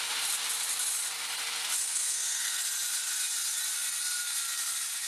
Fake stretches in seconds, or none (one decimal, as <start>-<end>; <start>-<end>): 1.8-2.6